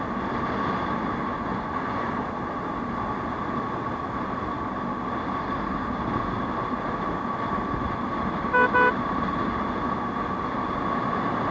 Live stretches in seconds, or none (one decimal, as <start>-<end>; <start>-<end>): 0.0-1.3; 2.1-11.5